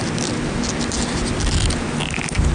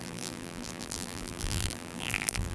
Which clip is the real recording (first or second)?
first